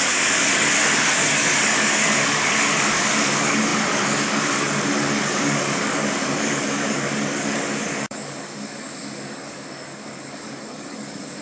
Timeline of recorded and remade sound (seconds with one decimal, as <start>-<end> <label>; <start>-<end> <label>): 0.0-11.4 remade